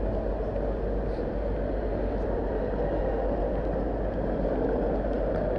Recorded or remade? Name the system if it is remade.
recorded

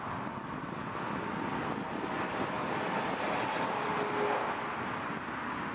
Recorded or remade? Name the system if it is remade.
recorded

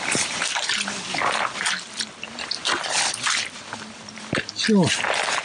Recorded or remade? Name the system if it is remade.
recorded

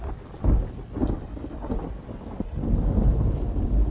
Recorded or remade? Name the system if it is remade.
recorded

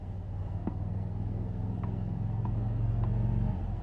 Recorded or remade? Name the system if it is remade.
remade, codec, SNAC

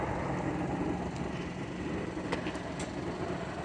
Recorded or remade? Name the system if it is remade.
recorded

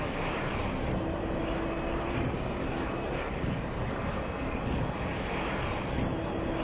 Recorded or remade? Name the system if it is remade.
recorded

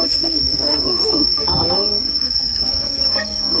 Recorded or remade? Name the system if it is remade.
remade, codec, SNAC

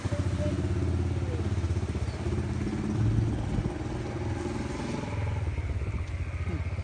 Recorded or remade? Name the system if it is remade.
recorded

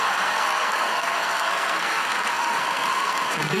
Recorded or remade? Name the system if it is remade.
remade, codec, SNAC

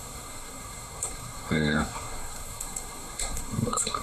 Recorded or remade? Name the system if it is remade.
remade, codec, SNAC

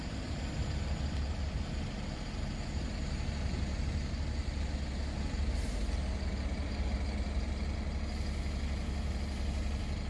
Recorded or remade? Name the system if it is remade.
recorded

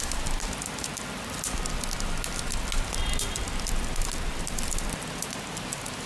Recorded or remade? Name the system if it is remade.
recorded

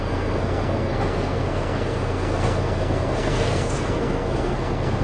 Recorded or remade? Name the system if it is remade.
remade, codec, SNAC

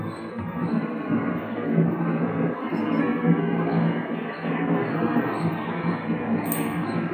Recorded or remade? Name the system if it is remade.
remade, codec, SNAC